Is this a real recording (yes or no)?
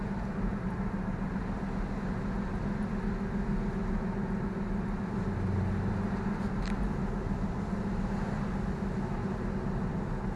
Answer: yes